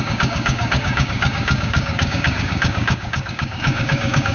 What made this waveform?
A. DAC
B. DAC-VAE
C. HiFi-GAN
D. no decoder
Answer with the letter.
A